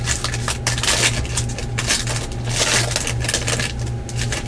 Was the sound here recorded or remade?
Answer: recorded